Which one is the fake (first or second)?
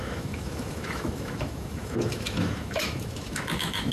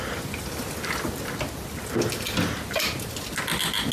first